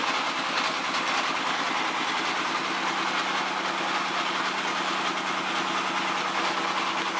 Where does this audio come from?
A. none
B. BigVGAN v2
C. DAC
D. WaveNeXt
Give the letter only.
A